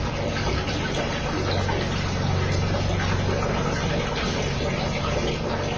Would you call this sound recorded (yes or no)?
yes